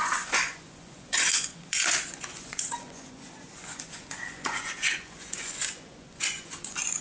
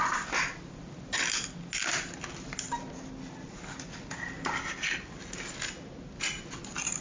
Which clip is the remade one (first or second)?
first